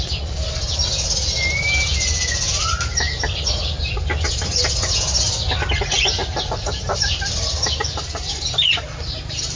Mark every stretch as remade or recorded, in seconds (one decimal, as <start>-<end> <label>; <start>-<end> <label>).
0.0-6.2 recorded; 6.2-8.4 remade; 8.4-9.6 recorded